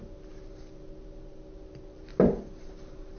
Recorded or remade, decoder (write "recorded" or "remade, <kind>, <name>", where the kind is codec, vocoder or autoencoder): recorded